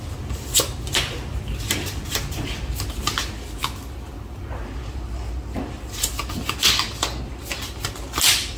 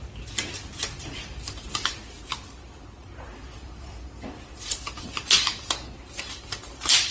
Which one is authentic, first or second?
first